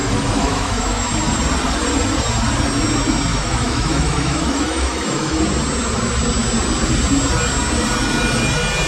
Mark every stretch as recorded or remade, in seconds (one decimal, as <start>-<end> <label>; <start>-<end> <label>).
0.0-1.1 remade; 1.1-3.3 recorded; 3.3-5.4 remade; 5.4-8.9 recorded